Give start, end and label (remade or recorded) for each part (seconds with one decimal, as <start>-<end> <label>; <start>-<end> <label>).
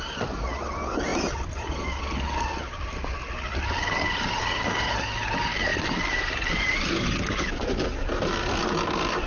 0.0-9.3 recorded